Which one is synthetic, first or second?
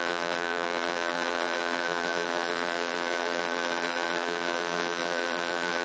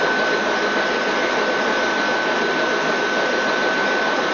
first